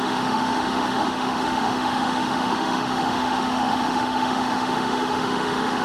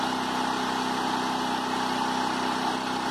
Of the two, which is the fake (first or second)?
first